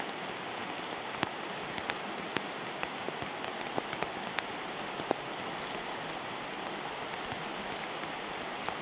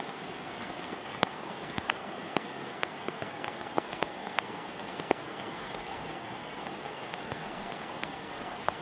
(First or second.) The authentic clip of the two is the first